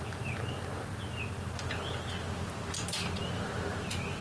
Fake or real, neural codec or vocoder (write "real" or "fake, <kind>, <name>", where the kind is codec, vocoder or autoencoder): real